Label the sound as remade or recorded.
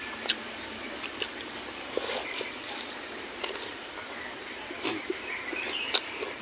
remade